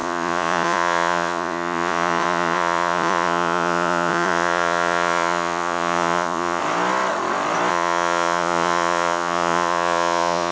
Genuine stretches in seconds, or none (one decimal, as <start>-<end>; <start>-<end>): 6.6-7.7